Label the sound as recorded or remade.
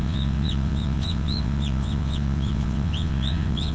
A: remade